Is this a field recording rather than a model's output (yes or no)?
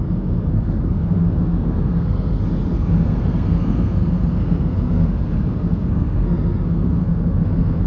no